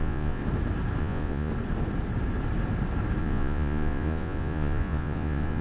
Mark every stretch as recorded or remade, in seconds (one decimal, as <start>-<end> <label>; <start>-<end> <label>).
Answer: 0.0-0.4 remade; 0.4-1.0 recorded; 1.0-1.5 remade; 1.5-3.2 recorded; 3.2-5.6 remade